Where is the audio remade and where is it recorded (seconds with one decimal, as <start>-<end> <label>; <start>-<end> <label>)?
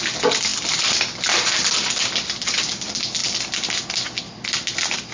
0.0-5.1 recorded